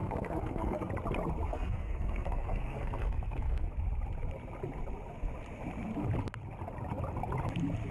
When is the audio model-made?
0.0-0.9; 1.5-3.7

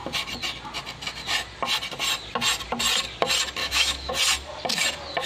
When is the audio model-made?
3.6-4.1

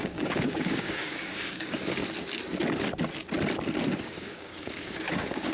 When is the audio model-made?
0.0-2.0; 4.0-5.5